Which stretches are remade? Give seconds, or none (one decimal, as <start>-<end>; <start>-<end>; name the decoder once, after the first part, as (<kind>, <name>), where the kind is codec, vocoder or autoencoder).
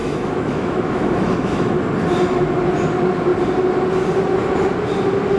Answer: 0.0-1.8 (autoencoder, DAC-VAE)